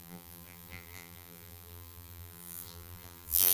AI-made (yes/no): yes